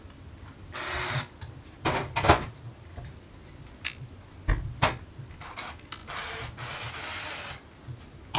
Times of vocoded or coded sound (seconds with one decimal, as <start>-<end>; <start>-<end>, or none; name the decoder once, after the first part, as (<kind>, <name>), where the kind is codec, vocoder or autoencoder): none